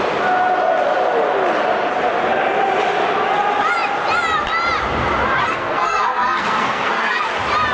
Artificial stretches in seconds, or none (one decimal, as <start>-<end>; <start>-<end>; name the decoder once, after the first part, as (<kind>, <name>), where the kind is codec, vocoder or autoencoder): 5.4-7.3 (codec, SNAC)